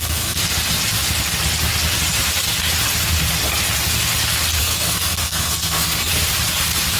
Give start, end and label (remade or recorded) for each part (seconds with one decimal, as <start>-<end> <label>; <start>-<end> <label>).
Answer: 0.0-0.4 remade; 0.4-4.6 recorded; 4.6-6.1 remade; 6.1-7.0 recorded